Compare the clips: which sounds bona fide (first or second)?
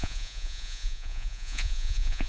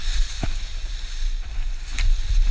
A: second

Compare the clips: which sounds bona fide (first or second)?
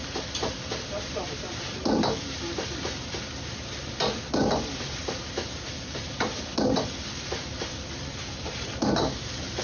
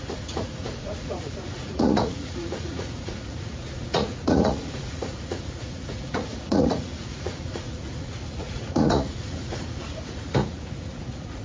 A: first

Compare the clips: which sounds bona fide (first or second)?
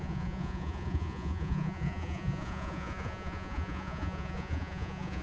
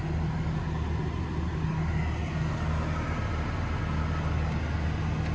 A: second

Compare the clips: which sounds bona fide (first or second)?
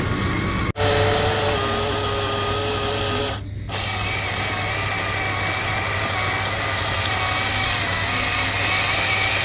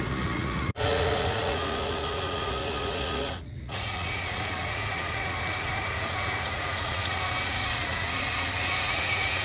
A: first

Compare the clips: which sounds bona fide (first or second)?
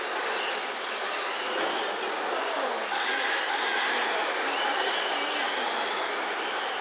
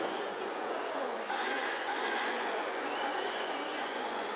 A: first